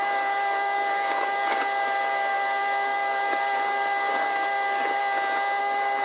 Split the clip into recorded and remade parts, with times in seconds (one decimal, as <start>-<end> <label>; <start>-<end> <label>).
0.0-5.0 remade; 5.0-5.6 recorded; 5.6-6.0 remade